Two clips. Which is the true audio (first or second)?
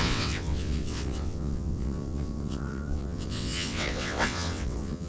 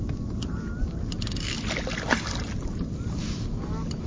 second